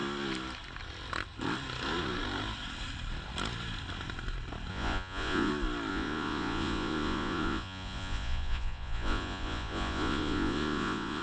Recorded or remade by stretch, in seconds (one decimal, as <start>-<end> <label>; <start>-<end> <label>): 0.0-4.7 recorded; 4.7-5.5 remade; 5.5-5.9 recorded; 5.9-11.2 remade